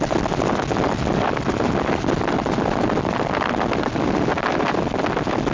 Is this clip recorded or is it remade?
recorded